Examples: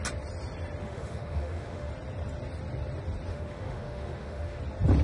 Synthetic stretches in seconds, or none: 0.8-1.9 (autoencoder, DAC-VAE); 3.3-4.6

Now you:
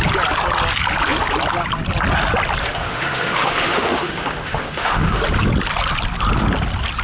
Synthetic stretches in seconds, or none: 2.6-5.2 (autoencoder, DAC-VAE)

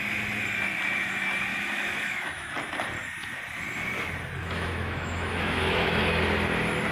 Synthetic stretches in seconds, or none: 1.5-2.5 (autoencoder, DAC-VAE); 4.4-6.0